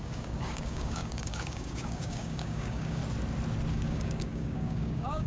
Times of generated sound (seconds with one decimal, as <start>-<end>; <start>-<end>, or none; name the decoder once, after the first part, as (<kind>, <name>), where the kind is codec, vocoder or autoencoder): 0.0-3.0 (codec, DAC); 3.7-5.3